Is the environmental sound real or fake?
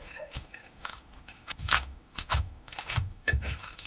fake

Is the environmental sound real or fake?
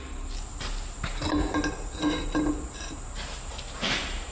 real